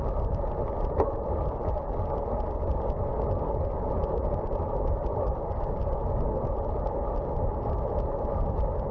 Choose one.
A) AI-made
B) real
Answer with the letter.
B